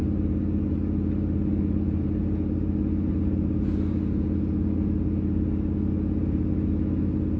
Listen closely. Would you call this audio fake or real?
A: real